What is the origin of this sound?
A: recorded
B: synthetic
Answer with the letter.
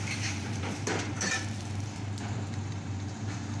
B